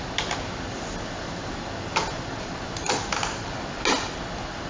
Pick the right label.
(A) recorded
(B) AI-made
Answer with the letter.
A